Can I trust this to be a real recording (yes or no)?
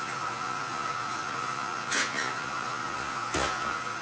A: no